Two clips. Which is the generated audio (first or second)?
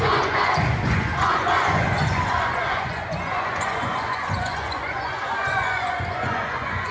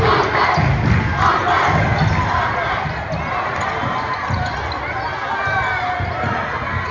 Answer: first